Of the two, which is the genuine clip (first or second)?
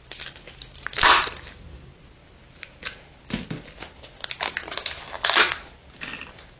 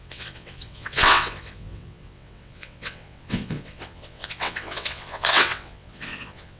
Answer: first